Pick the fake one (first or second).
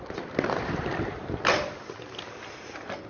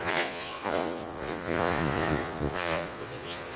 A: second